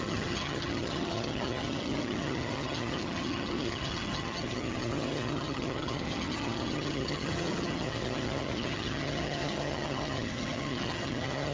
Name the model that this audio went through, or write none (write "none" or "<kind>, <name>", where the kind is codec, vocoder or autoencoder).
vocoder, HiFi-GAN